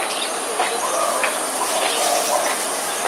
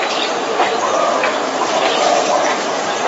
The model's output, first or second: second